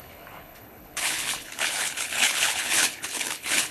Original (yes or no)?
no